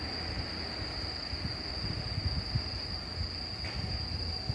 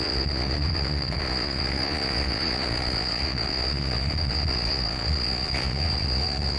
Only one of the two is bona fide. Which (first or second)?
first